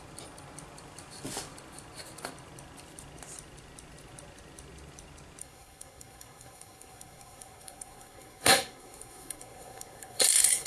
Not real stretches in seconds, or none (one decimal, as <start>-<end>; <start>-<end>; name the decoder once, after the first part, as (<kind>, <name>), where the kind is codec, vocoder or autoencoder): 5.4-10.7 (codec, SNAC)